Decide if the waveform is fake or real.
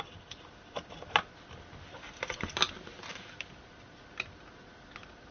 real